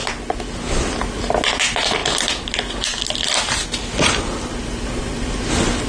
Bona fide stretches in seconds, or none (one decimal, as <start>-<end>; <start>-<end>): 0.0-5.9